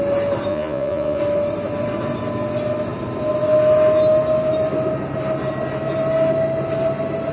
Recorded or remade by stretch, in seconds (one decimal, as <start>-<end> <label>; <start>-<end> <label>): 0.0-0.5 recorded; 0.5-1.2 remade; 1.2-7.3 recorded